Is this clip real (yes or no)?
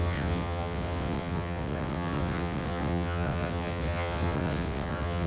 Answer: no